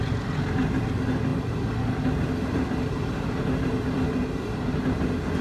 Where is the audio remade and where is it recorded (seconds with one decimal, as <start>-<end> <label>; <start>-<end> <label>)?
0.0-5.4 recorded